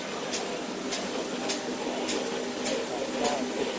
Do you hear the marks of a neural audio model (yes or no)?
no